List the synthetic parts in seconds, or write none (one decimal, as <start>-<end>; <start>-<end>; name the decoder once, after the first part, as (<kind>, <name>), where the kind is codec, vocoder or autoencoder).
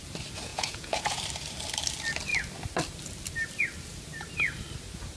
0.5-1.2 (vocoder, Vocos)